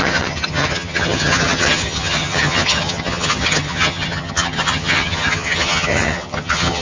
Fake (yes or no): yes